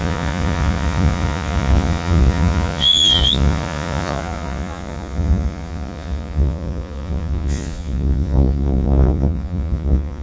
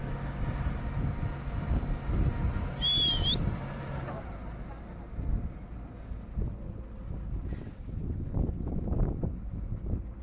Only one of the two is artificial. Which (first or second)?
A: first